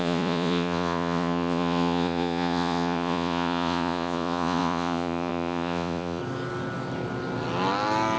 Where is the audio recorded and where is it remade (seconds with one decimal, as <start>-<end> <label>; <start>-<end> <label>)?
0.0-6.2 remade; 6.2-8.2 recorded